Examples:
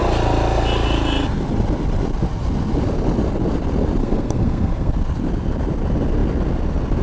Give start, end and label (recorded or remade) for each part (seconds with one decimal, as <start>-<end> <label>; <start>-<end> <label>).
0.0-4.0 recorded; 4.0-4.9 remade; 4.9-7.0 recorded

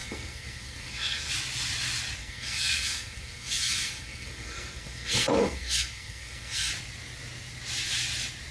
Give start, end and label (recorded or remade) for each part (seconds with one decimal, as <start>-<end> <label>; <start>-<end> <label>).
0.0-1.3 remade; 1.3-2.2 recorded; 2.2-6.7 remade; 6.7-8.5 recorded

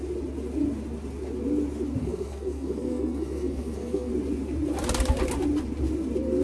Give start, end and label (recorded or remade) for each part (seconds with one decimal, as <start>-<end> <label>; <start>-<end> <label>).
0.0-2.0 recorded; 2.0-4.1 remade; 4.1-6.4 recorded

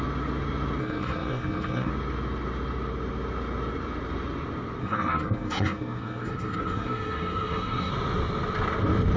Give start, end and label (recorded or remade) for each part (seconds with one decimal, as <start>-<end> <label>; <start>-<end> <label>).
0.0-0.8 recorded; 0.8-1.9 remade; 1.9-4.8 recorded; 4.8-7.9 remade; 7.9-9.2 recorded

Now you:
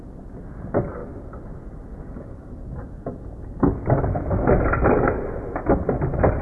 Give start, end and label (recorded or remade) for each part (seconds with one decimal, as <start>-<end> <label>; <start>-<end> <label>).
0.0-6.4 recorded